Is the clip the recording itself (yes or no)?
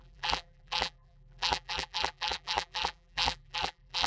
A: no